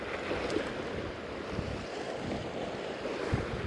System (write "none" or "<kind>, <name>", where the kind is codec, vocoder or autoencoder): none